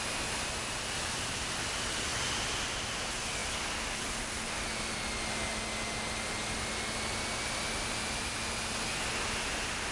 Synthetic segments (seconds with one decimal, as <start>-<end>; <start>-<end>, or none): none